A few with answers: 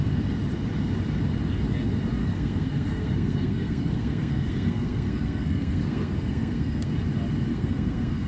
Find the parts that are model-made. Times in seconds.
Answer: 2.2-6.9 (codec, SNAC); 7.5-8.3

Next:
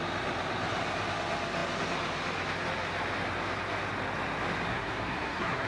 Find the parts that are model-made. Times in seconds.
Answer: 4.7-5.7 (codec, SNAC)

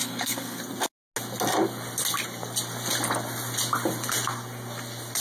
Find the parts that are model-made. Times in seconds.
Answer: 0.0-0.6 (codec, SNAC)